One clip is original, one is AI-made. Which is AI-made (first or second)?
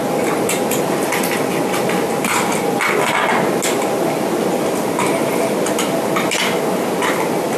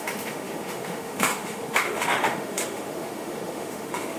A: second